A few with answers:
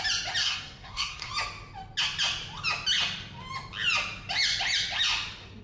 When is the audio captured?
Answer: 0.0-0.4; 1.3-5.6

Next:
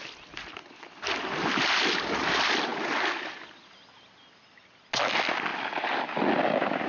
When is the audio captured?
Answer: 0.0-6.9

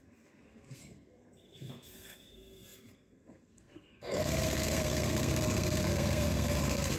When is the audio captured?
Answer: none

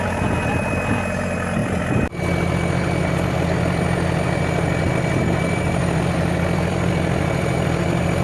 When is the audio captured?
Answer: 0.0-8.2

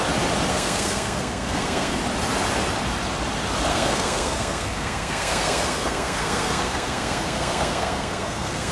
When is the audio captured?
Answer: 0.0-0.5; 2.0-3.7

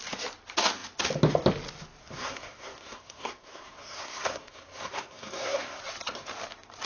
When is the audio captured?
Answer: 0.0-2.0; 5.8-6.9

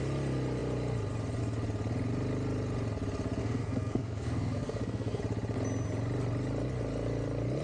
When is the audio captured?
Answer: 0.0-3.4; 5.2-7.6